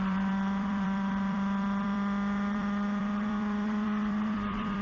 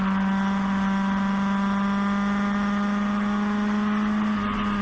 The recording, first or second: second